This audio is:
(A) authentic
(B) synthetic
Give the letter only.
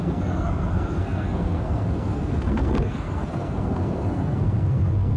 B